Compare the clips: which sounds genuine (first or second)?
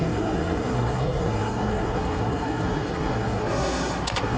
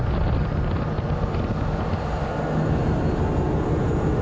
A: second